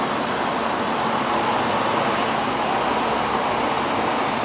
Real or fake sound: real